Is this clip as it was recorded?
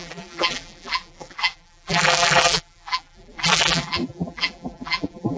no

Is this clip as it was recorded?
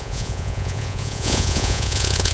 no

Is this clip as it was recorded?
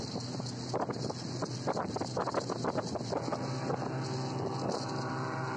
yes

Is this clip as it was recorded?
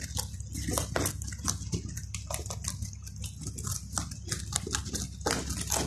yes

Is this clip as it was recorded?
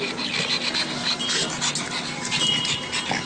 yes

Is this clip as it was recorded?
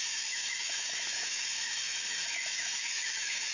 no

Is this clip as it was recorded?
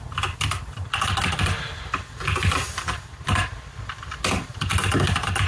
yes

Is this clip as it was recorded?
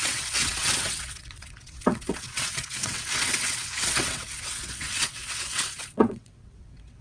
no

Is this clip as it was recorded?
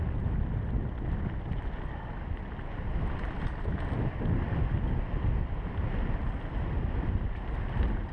yes